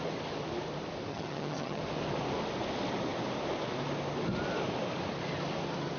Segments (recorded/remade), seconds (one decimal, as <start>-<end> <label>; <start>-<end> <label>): 0.0-1.1 recorded; 1.1-1.8 remade; 1.8-6.0 recorded